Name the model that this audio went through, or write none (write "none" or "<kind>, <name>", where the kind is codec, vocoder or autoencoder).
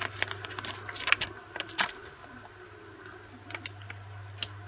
none